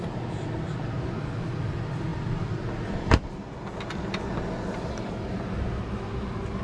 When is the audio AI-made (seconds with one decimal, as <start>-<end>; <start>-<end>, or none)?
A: none